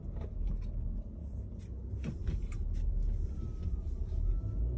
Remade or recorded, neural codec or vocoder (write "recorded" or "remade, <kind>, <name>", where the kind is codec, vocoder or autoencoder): recorded